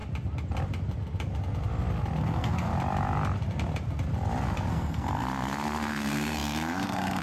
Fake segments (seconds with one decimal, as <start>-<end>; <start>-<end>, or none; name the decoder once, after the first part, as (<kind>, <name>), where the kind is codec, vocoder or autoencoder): 2.2-2.7 (codec, SNAC); 4.7-7.2